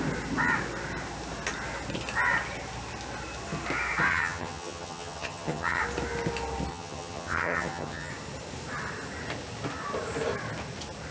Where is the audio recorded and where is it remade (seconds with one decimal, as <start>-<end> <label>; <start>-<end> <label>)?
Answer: 0.0-4.1 recorded; 4.1-5.8 remade; 5.8-6.7 recorded; 6.7-8.1 remade; 8.1-11.1 recorded